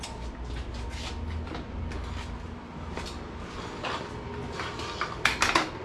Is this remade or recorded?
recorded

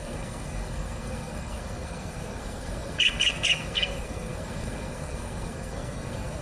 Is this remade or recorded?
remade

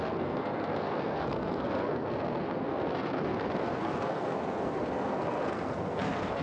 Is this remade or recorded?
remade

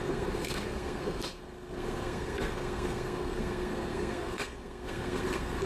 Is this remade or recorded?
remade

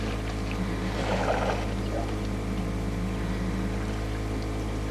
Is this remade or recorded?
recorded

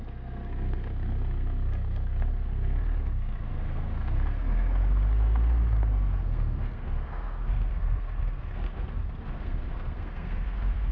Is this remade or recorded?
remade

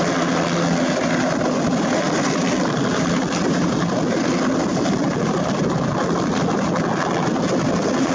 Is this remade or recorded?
recorded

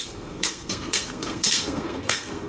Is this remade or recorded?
remade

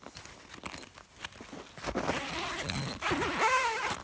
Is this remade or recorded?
recorded